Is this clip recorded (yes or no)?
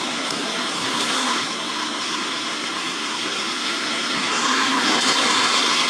no